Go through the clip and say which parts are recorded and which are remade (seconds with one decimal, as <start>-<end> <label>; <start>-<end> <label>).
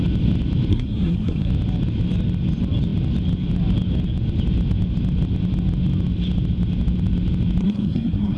0.0-0.7 recorded; 0.7-1.5 remade; 1.5-7.6 recorded; 7.6-8.4 remade